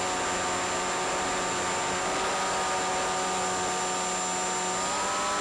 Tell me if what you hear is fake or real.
real